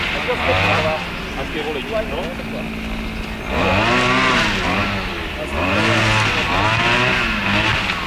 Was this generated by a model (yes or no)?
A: no